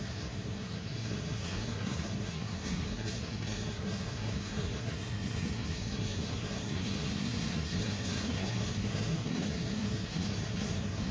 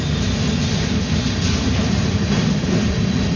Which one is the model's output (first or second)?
first